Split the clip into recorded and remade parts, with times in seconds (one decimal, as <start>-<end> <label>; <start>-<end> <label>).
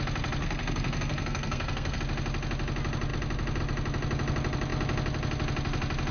0.0-0.4 recorded; 0.4-2.0 remade; 2.0-6.1 recorded